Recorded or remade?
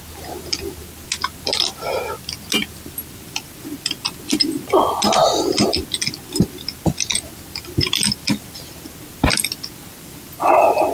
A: recorded